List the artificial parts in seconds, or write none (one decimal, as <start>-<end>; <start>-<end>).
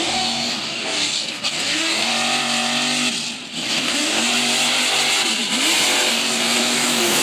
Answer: 0.0-2.1; 3.5-4.3; 6.1-7.2